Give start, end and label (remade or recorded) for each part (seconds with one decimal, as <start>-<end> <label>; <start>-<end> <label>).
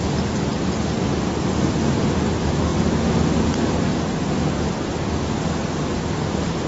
0.0-6.7 recorded